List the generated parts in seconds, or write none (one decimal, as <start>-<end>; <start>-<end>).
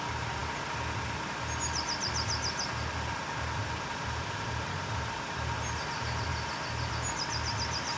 3.6-5.5; 6.3-6.9